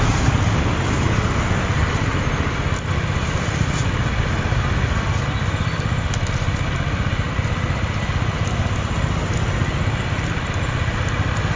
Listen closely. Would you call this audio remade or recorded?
recorded